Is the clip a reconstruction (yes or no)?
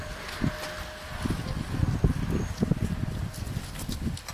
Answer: no